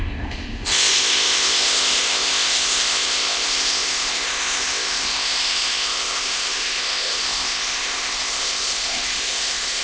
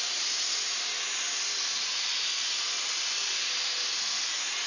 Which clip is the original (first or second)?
second